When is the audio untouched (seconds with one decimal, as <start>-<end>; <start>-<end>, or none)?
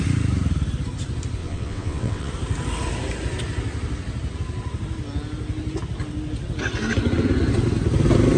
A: 0.0-1.4; 2.3-8.4